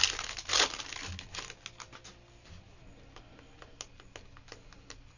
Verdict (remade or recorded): recorded